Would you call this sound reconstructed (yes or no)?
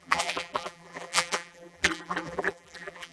yes